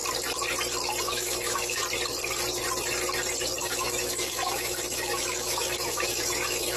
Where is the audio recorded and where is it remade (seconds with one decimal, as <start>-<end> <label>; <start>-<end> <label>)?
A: 0.0-1.0 recorded; 1.0-1.8 remade; 1.8-3.6 recorded; 3.6-6.8 remade